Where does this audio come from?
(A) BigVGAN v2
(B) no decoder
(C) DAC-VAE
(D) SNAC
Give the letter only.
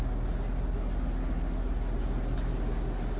B